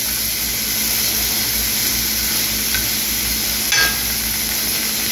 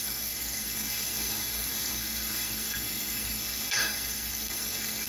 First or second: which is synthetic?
second